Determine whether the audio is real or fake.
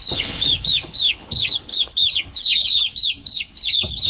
fake